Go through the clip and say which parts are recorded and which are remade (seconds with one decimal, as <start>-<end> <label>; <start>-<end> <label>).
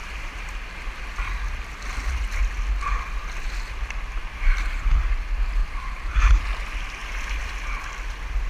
0.0-0.8 remade; 0.8-5.6 recorded; 5.6-6.2 remade; 6.2-8.5 recorded